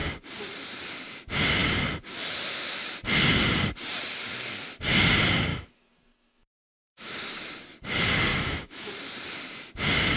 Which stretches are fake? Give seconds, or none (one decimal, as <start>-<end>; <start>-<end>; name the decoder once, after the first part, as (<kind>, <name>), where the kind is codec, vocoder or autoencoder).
5.5-7.1 (autoencoder, DAC-VAE); 8.3-8.9